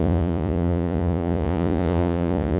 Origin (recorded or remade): remade